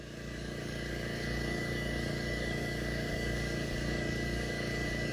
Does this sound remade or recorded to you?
remade